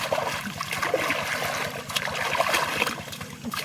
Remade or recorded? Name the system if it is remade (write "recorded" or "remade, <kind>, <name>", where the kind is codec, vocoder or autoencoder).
recorded